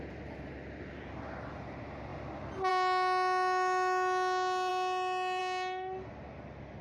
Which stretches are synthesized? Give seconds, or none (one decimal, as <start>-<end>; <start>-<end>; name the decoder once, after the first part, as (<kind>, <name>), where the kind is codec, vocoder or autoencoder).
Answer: none

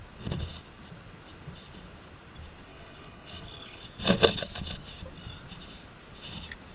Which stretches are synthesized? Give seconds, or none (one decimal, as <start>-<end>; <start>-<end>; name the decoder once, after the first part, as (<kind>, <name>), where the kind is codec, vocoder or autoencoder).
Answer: 2.7-3.8 (codec, HILCodec)

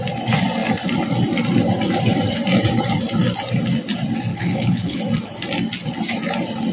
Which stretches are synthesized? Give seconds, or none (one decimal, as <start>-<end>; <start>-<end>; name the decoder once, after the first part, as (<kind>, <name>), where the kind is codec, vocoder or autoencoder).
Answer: 4.3-5.0 (codec, HILCodec)